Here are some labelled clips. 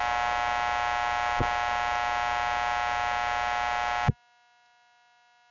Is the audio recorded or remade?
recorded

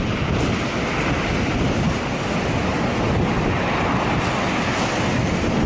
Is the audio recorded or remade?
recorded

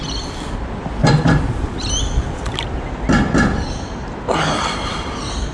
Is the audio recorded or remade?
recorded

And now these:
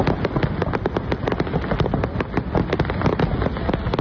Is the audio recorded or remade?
recorded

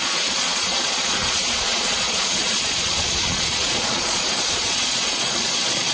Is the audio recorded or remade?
remade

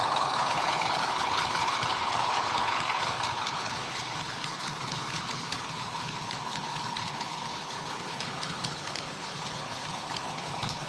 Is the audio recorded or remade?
remade